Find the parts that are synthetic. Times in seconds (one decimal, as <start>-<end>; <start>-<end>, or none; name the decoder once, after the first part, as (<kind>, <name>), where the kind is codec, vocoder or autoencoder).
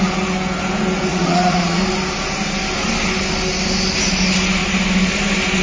1.1-1.8 (vocoder, Vocos)